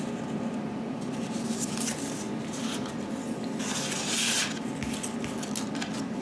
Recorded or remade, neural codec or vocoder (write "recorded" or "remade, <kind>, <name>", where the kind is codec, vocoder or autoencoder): recorded